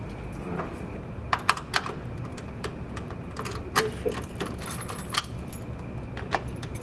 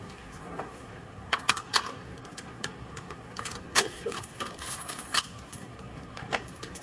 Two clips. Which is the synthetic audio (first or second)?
second